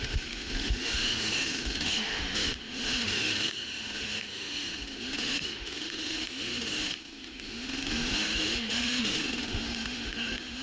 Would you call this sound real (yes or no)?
no